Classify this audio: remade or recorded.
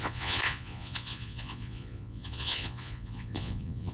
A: remade